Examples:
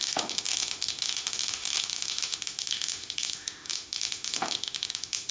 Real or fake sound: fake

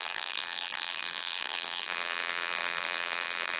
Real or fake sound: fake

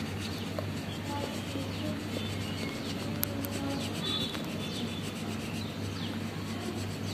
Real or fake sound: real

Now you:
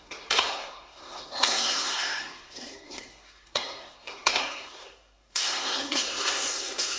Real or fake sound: fake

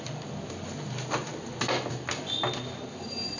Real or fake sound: real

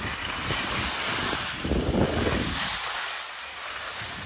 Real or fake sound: real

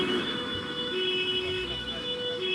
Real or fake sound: fake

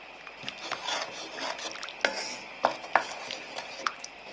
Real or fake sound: real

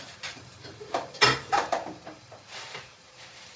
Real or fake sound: fake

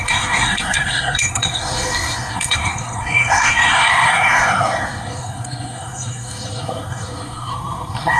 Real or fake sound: fake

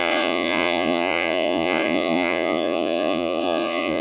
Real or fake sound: fake